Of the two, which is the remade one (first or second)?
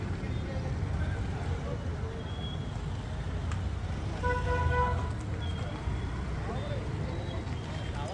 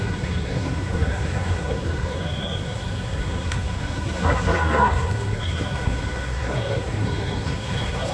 second